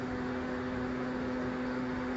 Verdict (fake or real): fake